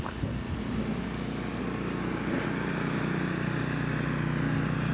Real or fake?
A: real